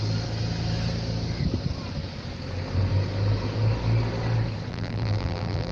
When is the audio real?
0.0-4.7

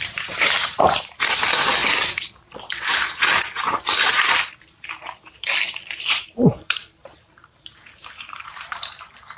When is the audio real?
1.8-6.2